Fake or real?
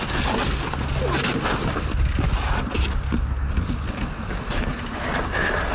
real